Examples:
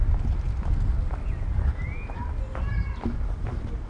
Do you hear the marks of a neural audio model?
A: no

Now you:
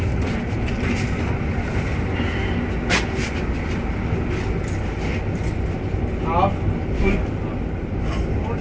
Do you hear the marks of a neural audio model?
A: no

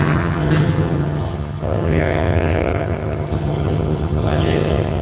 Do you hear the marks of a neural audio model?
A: yes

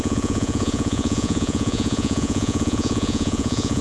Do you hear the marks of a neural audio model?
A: yes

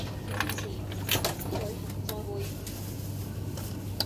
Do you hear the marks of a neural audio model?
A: no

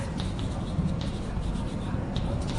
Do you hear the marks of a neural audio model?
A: no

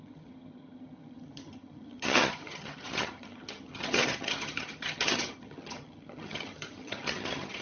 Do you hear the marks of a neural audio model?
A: yes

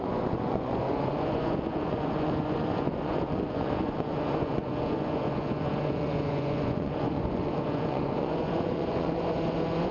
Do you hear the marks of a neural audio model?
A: yes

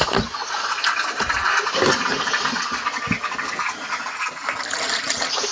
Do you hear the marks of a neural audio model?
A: no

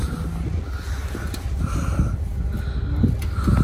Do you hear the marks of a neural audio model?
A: no